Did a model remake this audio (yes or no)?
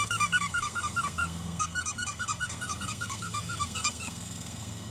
yes